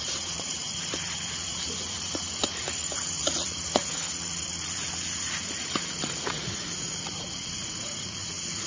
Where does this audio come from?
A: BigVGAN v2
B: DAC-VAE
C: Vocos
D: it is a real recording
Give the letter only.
C